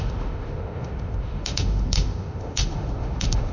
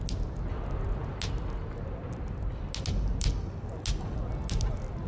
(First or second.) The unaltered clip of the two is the second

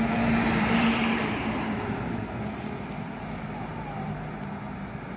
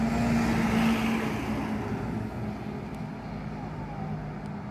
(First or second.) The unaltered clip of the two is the second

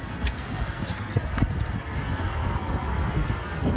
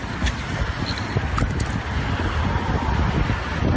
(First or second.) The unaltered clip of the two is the second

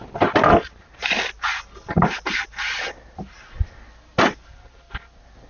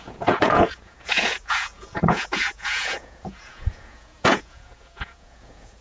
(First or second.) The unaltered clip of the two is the first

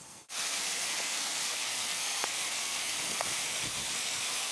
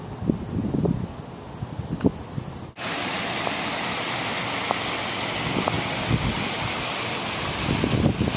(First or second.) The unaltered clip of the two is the second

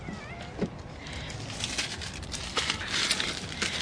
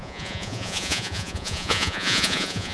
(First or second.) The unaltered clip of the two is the first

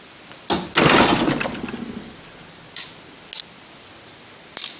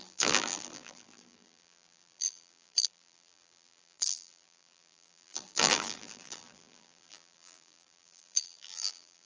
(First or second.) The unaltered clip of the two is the first